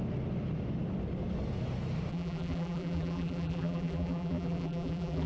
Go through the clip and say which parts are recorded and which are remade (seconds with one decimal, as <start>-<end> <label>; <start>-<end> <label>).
0.0-2.1 recorded; 2.1-5.3 remade